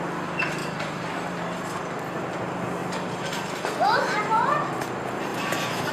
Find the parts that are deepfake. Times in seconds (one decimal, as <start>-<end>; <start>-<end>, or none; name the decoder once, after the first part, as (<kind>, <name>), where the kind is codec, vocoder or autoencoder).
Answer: 0.6-1.8 (vocoder, BigVGAN v2); 2.8-4.8; 5.3-5.9